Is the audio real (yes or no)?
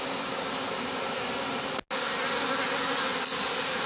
yes